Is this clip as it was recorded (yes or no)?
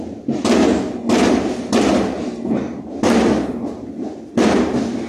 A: yes